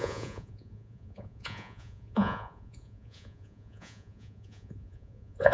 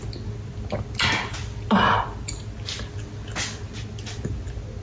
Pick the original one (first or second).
second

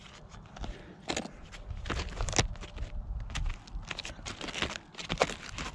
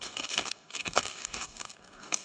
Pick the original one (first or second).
first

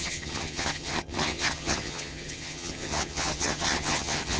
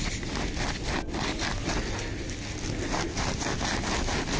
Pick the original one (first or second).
second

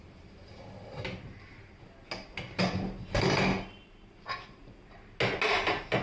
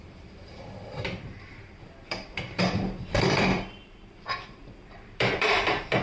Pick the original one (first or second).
first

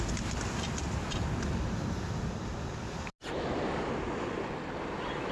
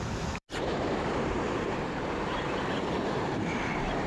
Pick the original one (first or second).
first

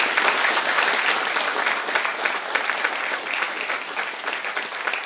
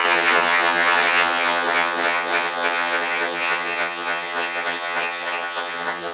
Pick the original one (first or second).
first